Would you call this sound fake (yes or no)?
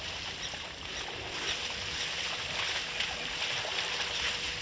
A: yes